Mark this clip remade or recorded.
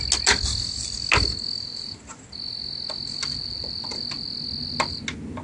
recorded